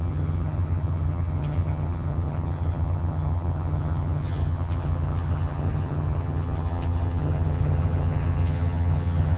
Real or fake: fake